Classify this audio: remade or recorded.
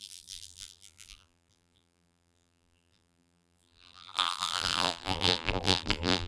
remade